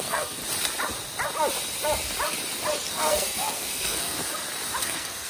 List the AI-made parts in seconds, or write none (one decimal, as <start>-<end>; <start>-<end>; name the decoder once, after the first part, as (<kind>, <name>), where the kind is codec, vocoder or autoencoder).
0.0-0.4 (codec, SNAC); 2.9-4.2; 4.8-5.3